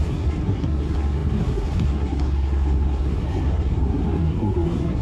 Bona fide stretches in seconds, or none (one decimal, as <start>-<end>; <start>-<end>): none